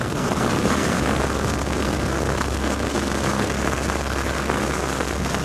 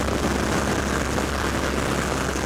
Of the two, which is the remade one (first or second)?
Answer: first